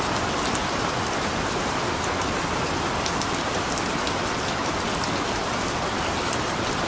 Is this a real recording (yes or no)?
yes